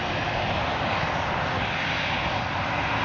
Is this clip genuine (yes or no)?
yes